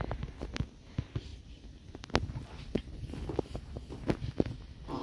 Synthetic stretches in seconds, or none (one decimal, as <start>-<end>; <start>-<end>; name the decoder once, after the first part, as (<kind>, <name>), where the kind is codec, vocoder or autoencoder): none